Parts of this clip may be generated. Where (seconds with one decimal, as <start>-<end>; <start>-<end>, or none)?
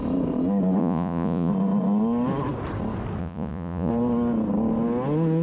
0.8-1.5; 3.2-3.9